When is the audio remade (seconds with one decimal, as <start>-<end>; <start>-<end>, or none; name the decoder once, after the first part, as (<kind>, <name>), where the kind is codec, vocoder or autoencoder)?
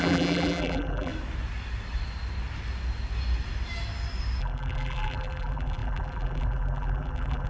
0.0-1.1 (vocoder, BigVGAN v2); 4.4-7.5